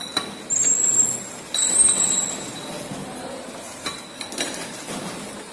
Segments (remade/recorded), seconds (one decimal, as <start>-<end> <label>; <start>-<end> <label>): 0.0-3.0 recorded; 3.0-4.0 remade; 4.0-4.7 recorded; 4.7-5.5 remade